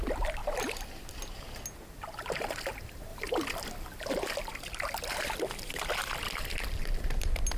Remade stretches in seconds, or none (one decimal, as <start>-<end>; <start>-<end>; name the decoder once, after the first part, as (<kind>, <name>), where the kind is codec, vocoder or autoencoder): 0.4-1.0 (vocoder, BigVGAN v2); 3.1-4.1; 6.0-7.0